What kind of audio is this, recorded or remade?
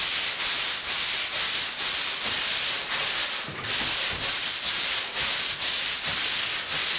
recorded